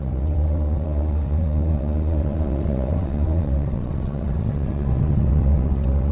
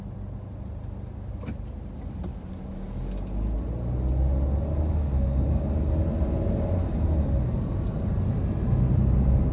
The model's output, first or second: first